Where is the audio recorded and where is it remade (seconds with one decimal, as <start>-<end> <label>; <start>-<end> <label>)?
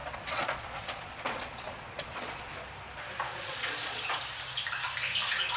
0.0-2.5 remade; 2.5-3.3 recorded; 3.3-4.1 remade; 4.1-5.6 recorded